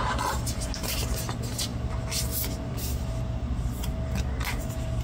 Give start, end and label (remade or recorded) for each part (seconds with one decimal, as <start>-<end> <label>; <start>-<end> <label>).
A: 0.0-5.0 recorded